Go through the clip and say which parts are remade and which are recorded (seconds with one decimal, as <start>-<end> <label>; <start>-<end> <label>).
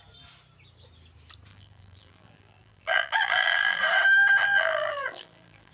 0.0-1.5 recorded; 1.5-3.8 remade; 3.8-4.4 recorded; 4.4-5.7 remade